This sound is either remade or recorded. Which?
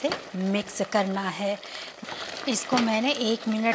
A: recorded